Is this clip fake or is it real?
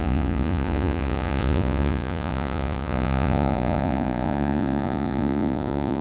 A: fake